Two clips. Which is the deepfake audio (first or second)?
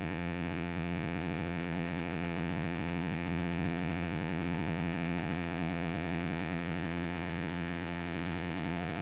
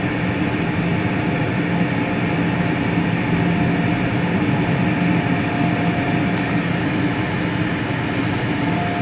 first